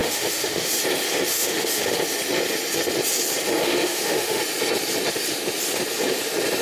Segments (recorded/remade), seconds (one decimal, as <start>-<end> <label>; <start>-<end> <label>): 0.0-0.7 remade; 0.7-1.3 recorded; 1.3-2.0 remade; 2.0-3.6 recorded; 3.6-4.4 remade; 4.4-6.6 recorded